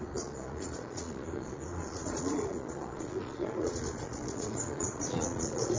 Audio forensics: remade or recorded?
remade